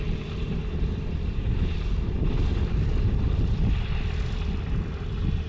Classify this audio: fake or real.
fake